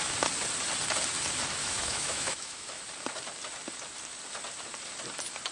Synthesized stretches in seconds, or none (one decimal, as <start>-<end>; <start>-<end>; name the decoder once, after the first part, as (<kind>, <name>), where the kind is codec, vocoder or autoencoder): 1.6-2.8 (autoencoder, DAC-VAE)